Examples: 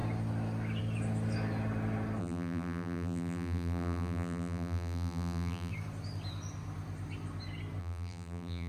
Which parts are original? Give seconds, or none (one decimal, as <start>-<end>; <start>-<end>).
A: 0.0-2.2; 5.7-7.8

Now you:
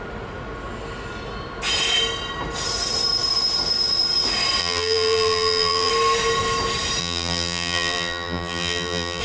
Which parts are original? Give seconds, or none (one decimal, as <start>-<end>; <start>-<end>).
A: 0.0-4.6; 5.9-7.0

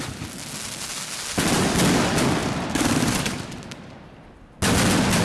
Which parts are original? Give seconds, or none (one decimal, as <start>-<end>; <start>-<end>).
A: 0.0-2.4; 4.3-5.2